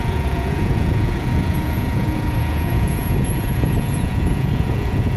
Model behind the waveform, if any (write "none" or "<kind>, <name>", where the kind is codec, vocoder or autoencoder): vocoder, Vocos